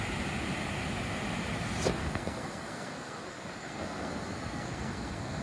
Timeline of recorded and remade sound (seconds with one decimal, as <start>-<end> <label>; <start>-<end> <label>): 0.0-2.0 recorded; 2.0-5.4 remade